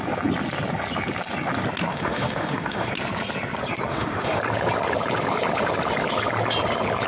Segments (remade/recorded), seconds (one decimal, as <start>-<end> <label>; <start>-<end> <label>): 0.0-1.9 recorded; 1.9-2.9 remade; 2.9-3.9 recorded; 3.9-4.4 remade; 4.4-7.1 recorded